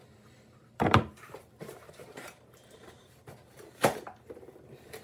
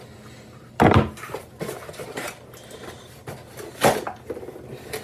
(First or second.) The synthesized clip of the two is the first